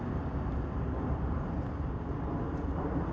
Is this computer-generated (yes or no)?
no